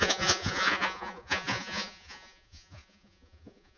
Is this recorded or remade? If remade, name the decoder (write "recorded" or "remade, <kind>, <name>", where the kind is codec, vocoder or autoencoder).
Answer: remade, vocoder, Vocos